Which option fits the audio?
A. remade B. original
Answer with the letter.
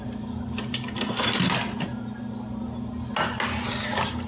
B